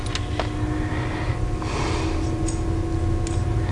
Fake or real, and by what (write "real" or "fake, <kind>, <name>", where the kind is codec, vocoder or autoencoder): real